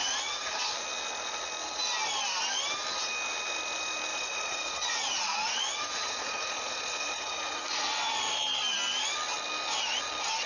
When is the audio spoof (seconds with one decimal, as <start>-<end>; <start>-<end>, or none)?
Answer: 0.0-0.7; 4.1-8.3